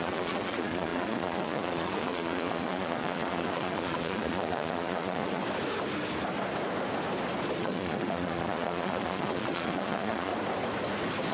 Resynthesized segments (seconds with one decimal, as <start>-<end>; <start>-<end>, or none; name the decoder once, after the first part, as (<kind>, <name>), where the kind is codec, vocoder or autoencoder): 0.0-5.4 (vocoder, Vocos); 7.6-10.3